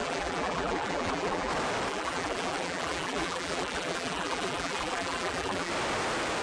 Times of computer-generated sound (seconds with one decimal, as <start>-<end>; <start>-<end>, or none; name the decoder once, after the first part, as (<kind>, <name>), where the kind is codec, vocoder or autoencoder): 0.0-1.5 (vocoder, BigVGAN v2); 1.9-5.7